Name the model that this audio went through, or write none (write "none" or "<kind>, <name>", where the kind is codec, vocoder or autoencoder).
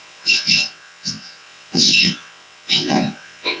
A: vocoder, WaveNeXt